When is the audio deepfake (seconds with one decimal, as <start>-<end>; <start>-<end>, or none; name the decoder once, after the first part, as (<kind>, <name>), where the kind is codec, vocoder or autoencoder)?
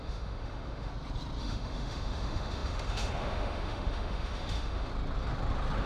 0.0-0.9 (autoencoder, DAC-VAE); 1.4-4.9